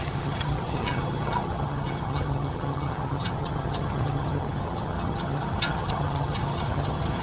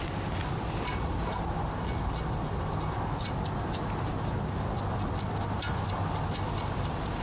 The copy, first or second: first